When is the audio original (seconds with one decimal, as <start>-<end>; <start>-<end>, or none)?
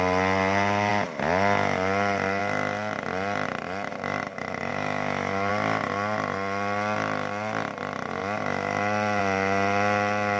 0.0-4.7; 5.5-10.4